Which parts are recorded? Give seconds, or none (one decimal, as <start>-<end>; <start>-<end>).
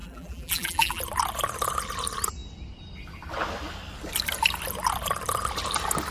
1.0-6.1